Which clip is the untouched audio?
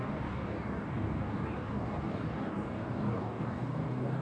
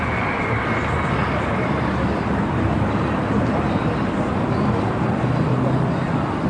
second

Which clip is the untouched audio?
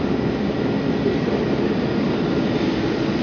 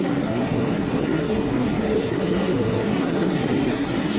first